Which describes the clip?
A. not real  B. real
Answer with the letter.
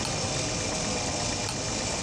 B